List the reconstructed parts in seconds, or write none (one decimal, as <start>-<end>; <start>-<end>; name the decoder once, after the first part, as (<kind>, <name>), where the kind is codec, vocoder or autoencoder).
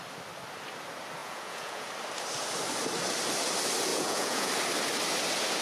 1.2-1.9 (vocoder, Vocos); 3.9-4.5